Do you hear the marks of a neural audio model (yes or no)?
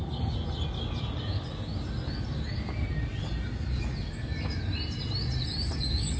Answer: no